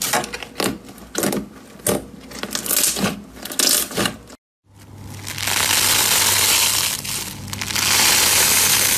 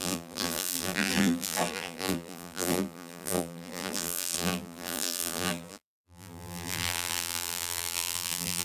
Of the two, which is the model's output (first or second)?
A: second